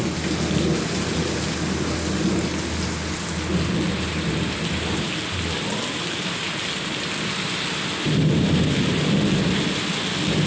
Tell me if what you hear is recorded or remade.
recorded